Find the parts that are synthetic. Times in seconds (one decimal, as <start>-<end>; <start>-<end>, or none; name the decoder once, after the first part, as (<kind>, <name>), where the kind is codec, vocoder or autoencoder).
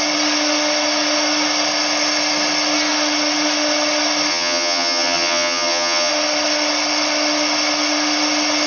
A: 4.3-6.1 (vocoder, HiFi-GAN)